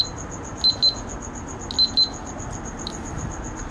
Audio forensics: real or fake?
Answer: real